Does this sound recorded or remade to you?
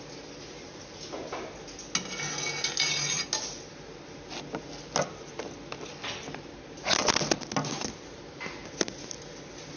recorded